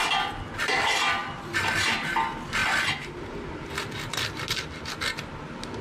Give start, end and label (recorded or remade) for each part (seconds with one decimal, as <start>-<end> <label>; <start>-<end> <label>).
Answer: 0.0-1.2 recorded; 1.2-1.7 remade; 1.7-5.8 recorded